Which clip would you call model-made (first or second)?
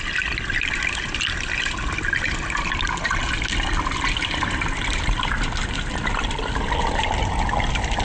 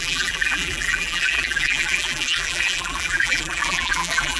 second